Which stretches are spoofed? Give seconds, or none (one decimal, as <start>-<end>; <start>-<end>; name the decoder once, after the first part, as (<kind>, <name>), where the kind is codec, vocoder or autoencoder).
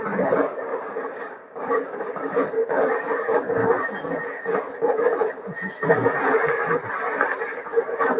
0.0-3.6 (codec, DAC)